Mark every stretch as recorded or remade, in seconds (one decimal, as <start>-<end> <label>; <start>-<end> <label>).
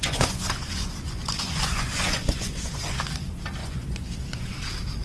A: 0.0-3.0 remade; 3.0-3.6 recorded; 3.6-4.5 remade; 4.5-5.0 recorded